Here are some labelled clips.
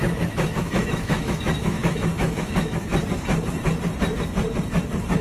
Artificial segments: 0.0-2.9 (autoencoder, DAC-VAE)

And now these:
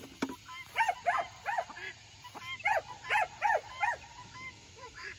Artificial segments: 4.2-5.2 (autoencoder, DAC-VAE)

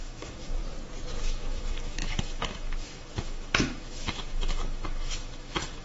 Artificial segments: 0.0-0.6 (autoencoder, DAC-VAE); 1.2-5.8

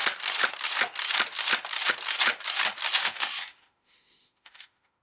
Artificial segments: 3.0-5.0 (autoencoder, DAC-VAE)

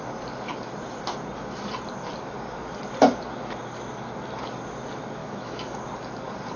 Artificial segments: 5.2-5.8 (autoencoder, DAC-VAE)